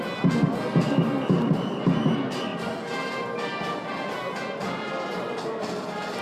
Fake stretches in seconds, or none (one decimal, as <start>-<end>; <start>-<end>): none